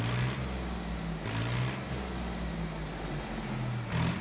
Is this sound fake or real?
real